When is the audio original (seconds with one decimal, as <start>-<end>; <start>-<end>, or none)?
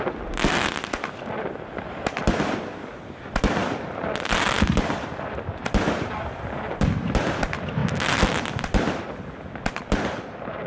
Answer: 3.6-4.3